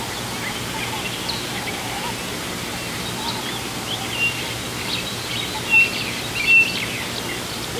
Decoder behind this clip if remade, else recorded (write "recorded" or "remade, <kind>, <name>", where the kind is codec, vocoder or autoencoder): recorded